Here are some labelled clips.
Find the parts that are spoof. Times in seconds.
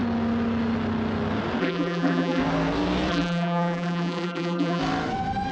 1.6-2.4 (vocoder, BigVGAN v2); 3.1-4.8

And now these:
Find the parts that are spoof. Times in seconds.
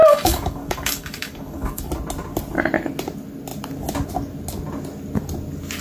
0.0-1.9 (codec, DAC)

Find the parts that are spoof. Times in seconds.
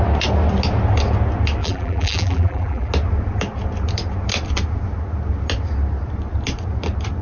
1.6-2.9 (vocoder, BigVGAN v2)